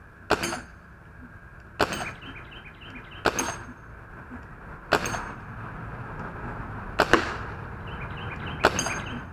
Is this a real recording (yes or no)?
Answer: yes